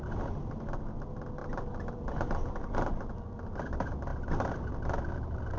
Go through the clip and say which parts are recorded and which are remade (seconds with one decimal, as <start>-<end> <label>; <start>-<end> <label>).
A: 0.0-1.4 recorded; 1.4-3.1 remade; 3.1-5.6 recorded